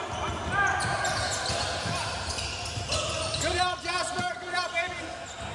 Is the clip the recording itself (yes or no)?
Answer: yes